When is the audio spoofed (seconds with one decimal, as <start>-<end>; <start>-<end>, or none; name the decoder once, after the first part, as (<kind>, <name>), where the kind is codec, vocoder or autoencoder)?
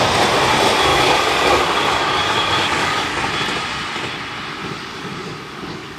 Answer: 0.9-3.3 (codec, DAC); 4.6-6.0